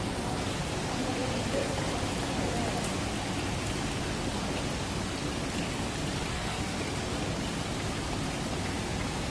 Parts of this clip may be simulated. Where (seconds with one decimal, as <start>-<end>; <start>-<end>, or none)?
6.3-6.8